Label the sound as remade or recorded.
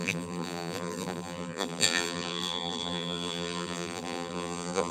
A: remade